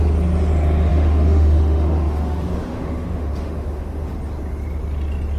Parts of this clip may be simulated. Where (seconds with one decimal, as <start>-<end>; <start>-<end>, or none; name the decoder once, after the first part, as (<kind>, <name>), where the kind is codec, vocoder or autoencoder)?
0.9-4.1 (autoencoder, DAC-VAE)